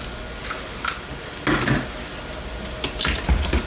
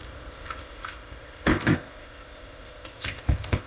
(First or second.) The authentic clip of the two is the first